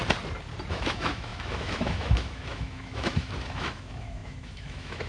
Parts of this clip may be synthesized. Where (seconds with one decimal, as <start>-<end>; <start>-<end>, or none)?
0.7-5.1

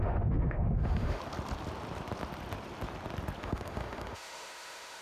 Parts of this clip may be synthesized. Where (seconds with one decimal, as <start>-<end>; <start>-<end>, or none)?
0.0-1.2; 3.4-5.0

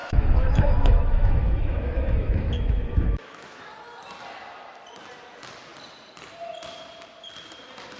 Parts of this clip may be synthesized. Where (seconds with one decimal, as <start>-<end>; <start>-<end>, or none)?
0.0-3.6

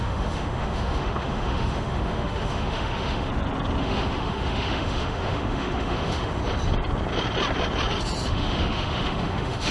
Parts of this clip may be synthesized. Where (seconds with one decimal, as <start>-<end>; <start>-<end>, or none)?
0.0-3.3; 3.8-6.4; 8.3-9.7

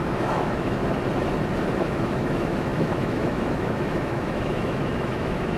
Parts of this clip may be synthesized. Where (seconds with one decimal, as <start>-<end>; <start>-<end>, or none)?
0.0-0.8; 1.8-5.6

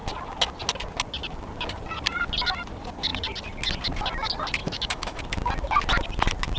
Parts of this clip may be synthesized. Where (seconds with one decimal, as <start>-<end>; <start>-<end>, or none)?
4.6-5.2

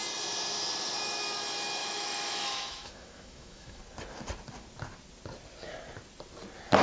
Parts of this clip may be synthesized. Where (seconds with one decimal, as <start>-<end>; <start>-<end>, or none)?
1.8-3.8